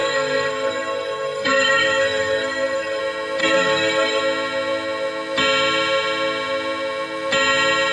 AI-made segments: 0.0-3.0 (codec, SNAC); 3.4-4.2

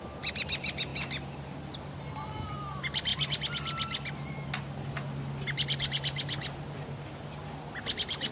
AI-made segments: none

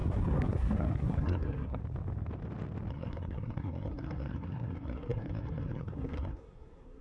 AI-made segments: 0.0-1.8 (codec, SNAC); 2.9-7.0

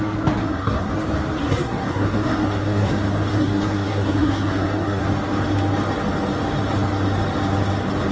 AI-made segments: 0.4-0.9 (codec, SNAC); 1.4-2.9; 3.3-5.0

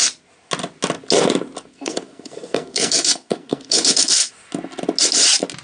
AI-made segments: 1.7-4.3 (codec, SNAC)

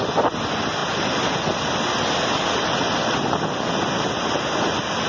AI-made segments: none

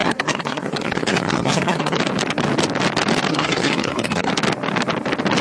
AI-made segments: 0.0-2.0 (codec, SNAC); 3.3-4.3

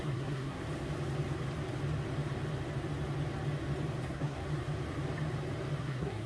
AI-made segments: 0.0-0.6 (codec, SNAC); 4.0-4.4; 5.8-6.3